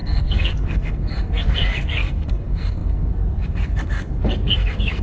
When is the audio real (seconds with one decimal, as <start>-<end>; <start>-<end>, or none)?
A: none